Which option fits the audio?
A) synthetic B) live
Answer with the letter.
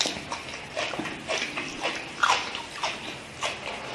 A